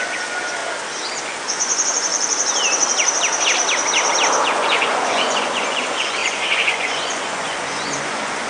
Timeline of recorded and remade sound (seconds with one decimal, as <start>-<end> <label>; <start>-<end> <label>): 0.0-0.6 remade; 0.6-1.2 recorded; 1.2-2.1 remade; 2.1-4.4 recorded; 4.4-8.5 remade